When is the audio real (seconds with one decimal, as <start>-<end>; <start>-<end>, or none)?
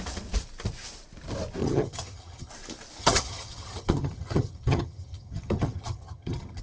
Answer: 0.0-1.6; 2.5-3.0